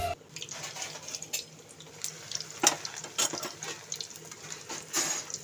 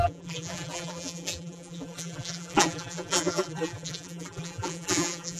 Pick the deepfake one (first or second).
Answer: second